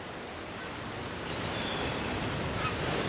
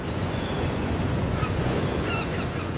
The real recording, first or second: first